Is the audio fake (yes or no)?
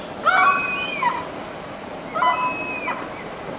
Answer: no